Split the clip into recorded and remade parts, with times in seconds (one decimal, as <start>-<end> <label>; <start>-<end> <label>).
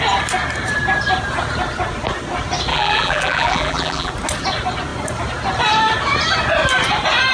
0.0-2.7 recorded; 2.7-4.1 remade; 4.1-7.3 recorded